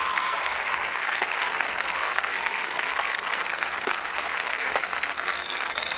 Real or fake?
fake